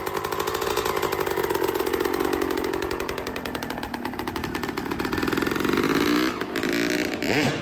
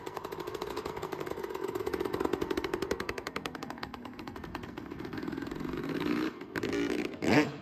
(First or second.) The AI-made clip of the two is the second